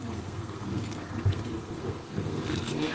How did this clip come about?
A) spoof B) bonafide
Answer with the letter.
A